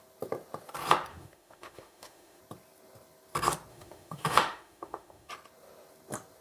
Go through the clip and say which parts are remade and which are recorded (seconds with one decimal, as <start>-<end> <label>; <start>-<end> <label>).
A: 0.0-1.1 recorded; 1.1-2.4 remade; 2.4-3.7 recorded; 3.7-5.3 remade; 5.3-6.4 recorded